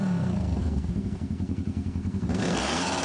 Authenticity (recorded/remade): remade